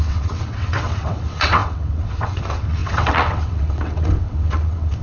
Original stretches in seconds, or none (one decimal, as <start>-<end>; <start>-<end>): none